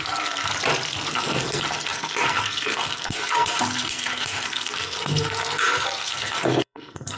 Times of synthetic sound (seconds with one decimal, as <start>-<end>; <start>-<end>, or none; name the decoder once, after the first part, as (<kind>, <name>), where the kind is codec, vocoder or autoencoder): 0.0-0.5 (codec, SNAC); 1.1-7.2